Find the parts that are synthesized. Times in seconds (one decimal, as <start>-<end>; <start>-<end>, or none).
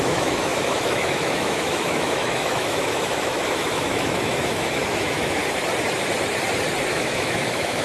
0.0-5.4; 6.9-7.8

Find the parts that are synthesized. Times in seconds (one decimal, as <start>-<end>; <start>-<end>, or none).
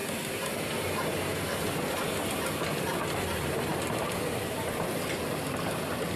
none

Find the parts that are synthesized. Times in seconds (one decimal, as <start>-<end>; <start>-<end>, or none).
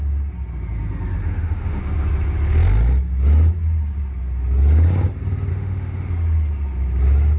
1.2-1.8; 5.5-6.1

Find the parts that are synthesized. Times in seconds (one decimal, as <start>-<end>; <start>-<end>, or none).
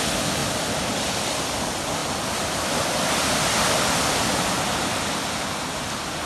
none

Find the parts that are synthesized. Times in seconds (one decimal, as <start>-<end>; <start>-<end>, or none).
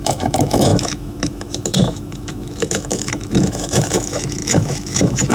0.0-5.3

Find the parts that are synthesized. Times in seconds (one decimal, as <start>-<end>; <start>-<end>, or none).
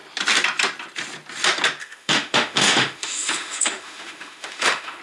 1.8-5.0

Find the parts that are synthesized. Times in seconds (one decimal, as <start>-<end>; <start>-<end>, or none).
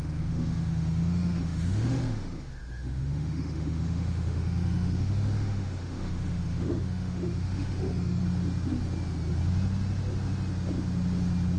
0.0-8.2